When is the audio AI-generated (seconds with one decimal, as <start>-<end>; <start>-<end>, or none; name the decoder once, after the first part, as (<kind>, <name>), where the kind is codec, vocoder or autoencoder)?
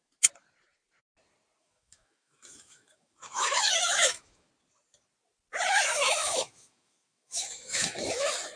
1.6-4.5 (autoencoder, DAC-VAE); 5.9-8.2